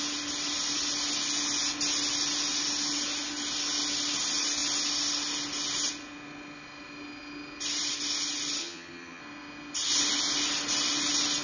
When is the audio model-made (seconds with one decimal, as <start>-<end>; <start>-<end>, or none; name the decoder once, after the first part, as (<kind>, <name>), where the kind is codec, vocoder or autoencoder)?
8.6-9.2 (vocoder, HiFi-GAN)

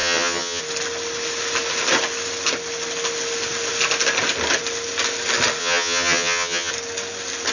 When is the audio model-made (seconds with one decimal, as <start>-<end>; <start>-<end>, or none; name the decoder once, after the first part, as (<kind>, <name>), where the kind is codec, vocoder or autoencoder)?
0.0-0.6 (vocoder, HiFi-GAN); 5.6-6.7